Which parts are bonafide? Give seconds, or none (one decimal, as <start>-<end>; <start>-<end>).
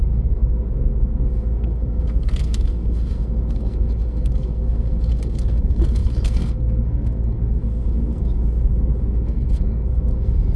none